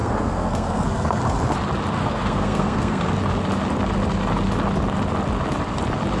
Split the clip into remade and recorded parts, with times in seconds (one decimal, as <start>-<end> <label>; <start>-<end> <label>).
0.0-1.2 remade; 1.2-2.0 recorded; 2.0-3.1 remade; 3.1-6.2 recorded